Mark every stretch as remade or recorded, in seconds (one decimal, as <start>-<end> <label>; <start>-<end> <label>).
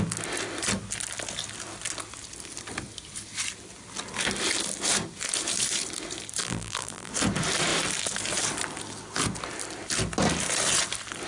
0.0-6.4 recorded; 6.4-7.1 remade; 7.1-11.3 recorded